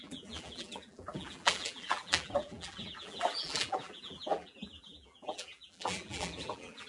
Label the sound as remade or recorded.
remade